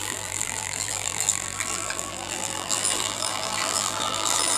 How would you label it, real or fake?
fake